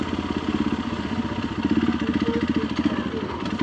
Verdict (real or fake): real